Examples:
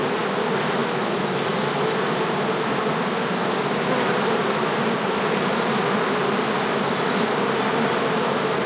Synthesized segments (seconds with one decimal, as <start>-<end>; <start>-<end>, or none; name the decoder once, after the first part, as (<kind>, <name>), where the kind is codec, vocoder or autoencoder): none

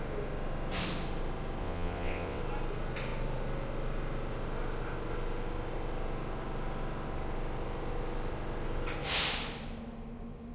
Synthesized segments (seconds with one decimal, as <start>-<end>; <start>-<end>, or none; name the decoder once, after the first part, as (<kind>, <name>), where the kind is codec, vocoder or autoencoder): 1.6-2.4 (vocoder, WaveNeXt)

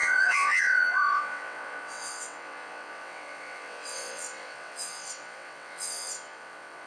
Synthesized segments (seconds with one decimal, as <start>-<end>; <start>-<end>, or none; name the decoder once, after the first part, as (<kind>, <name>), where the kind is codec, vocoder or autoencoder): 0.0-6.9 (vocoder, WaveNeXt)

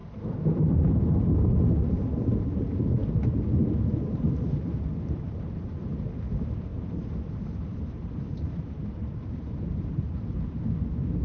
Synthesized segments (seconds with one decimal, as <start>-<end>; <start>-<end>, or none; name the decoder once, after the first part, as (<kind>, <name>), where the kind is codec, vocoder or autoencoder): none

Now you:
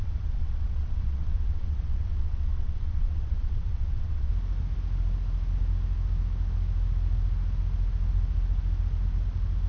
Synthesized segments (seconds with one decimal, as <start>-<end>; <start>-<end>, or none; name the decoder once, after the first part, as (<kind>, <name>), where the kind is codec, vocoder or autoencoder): 0.0-4.3 (vocoder, WaveNeXt)

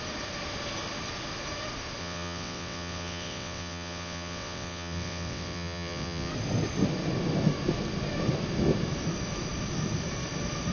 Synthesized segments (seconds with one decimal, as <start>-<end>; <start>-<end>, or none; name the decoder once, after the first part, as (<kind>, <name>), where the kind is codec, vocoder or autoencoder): 2.0-6.3 (vocoder, WaveNeXt)